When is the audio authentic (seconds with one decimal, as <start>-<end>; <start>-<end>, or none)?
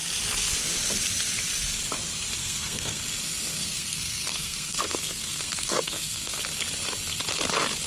0.0-2.4; 3.0-3.5; 6.4-7.9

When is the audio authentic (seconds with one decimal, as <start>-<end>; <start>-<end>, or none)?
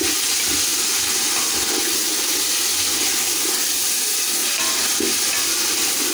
0.0-6.1